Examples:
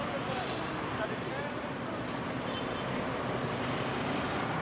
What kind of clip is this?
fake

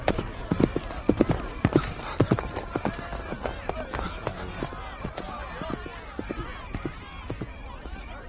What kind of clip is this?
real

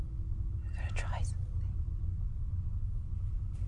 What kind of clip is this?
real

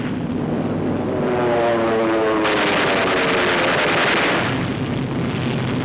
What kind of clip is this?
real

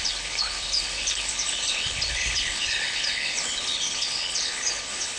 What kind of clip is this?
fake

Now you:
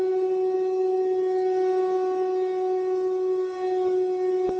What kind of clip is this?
real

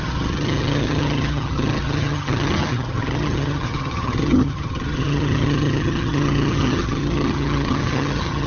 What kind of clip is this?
fake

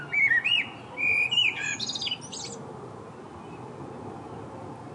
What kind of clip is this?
real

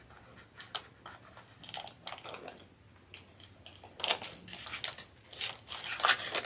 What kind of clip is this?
real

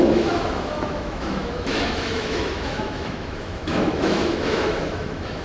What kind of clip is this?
fake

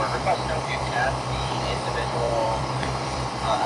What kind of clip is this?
fake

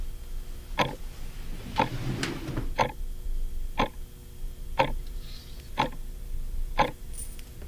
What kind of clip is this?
real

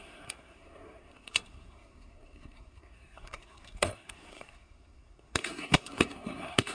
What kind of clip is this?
fake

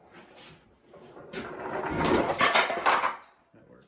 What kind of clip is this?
real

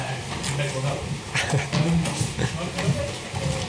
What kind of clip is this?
real